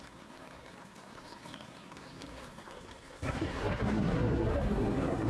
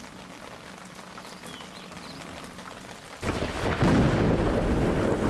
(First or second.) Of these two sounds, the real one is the second